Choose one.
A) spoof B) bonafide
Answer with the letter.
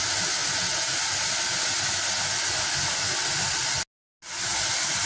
B